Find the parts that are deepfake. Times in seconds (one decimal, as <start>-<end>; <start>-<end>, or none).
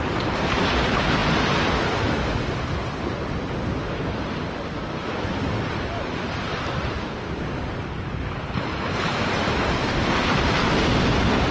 none